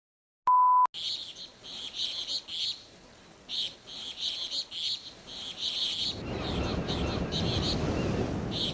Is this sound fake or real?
real